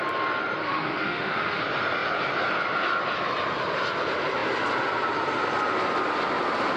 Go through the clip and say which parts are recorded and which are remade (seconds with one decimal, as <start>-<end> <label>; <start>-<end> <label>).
0.0-0.6 recorded; 0.6-1.6 remade; 1.6-6.8 recorded